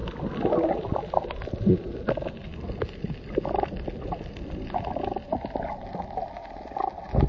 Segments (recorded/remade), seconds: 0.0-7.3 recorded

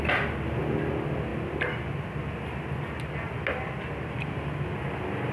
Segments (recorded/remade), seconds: 0.0-5.3 recorded

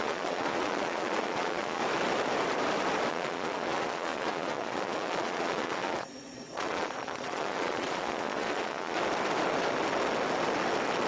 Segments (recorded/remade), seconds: 0.0-1.8 remade; 1.8-3.1 recorded; 3.1-9.0 remade; 9.0-11.1 recorded

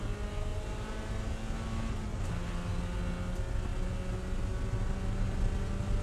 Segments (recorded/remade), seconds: 0.0-0.5 recorded; 0.5-1.1 remade; 1.1-6.0 recorded

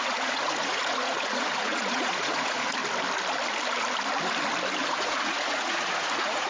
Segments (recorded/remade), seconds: 0.0-2.8 remade; 2.8-4.8 recorded; 4.8-6.5 remade

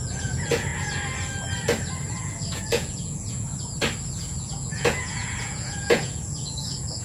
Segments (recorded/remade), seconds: 0.0-0.7 remade; 0.7-2.2 recorded; 2.2-3.5 remade; 3.5-4.3 recorded; 4.3-7.0 remade

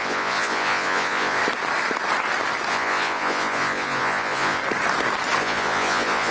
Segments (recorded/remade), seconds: 0.0-1.4 remade; 1.4-2.7 recorded; 2.7-4.6 remade; 4.6-5.4 recorded; 5.4-6.3 remade